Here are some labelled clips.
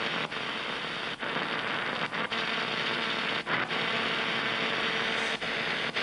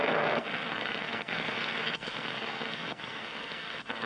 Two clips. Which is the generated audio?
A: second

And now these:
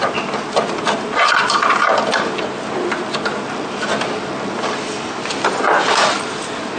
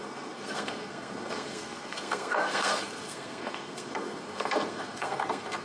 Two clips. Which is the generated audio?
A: second